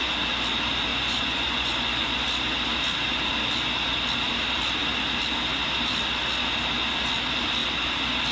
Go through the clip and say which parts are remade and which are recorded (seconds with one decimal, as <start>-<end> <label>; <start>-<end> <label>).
0.0-0.9 recorded; 0.9-2.2 remade; 2.2-8.3 recorded